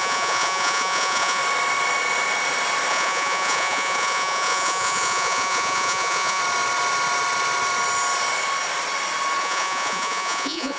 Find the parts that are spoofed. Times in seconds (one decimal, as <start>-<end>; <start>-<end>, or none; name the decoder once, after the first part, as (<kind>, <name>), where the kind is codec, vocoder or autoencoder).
0.0-1.4 (vocoder, Vocos); 2.9-6.4; 9.4-10.8